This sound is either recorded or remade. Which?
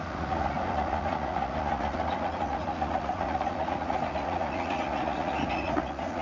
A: remade